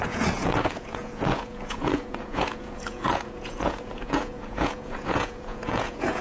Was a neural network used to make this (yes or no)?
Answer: yes